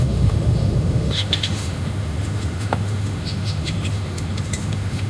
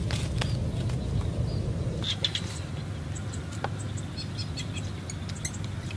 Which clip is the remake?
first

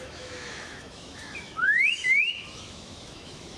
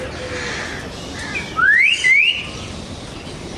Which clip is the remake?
first